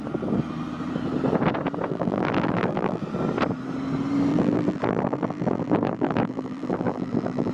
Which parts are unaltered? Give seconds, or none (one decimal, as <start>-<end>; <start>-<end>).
0.0-1.9; 3.0-4.3